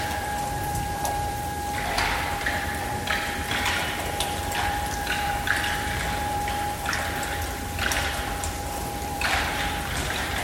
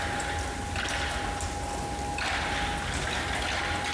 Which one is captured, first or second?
second